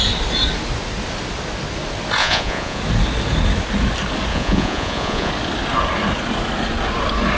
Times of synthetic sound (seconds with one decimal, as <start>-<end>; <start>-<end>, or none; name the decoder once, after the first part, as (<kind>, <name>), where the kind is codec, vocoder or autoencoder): 2.2-2.8 (vocoder, Vocos); 4.3-5.3